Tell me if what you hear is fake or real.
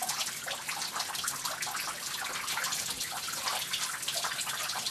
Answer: real